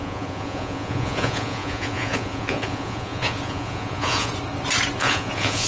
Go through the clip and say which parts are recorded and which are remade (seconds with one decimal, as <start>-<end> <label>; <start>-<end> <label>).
0.0-4.3 remade; 4.3-5.0 recorded; 5.0-5.7 remade